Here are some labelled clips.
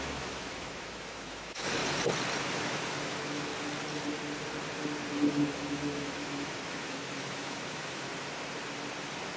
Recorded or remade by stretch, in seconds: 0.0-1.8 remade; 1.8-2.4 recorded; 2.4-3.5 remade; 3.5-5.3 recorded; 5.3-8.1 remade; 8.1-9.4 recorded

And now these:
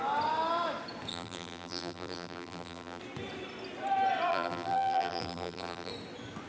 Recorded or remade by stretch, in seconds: 0.0-1.1 recorded; 1.1-3.0 remade; 3.0-4.3 recorded; 4.3-5.9 remade; 5.9-6.5 recorded

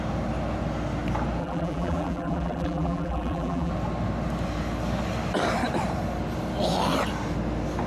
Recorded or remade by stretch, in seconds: 0.0-1.4 recorded; 1.4-3.7 remade; 3.7-7.9 recorded

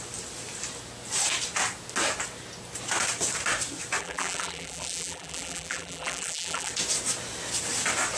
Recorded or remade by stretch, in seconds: 0.0-4.0 recorded; 4.0-6.7 remade; 6.7-8.2 recorded

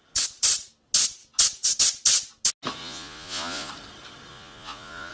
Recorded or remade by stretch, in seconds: 0.0-2.8 recorded; 2.8-3.7 remade; 3.7-4.3 recorded; 4.3-5.1 remade

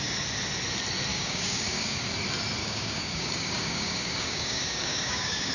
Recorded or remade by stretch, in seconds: 0.0-1.1 recorded; 1.1-2.0 remade; 2.0-2.6 recorded; 2.6-5.5 remade

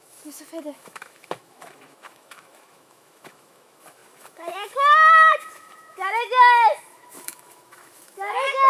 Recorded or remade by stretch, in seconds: 0.0-8.7 remade